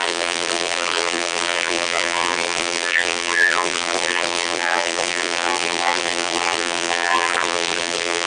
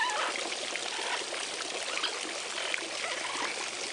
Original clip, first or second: second